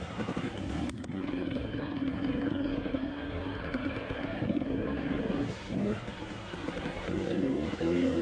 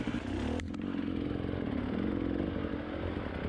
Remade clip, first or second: first